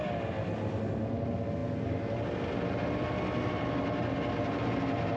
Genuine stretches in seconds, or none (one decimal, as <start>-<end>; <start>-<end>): 0.0-5.2